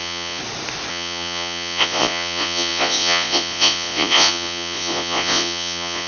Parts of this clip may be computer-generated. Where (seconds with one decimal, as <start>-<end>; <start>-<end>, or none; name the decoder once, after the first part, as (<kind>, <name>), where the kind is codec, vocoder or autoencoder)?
0.0-0.4 (vocoder, Vocos); 0.9-6.1